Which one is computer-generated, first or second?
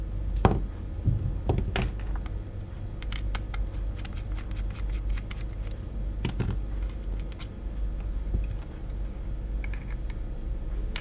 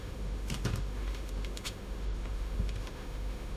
second